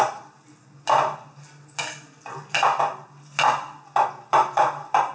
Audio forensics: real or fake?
real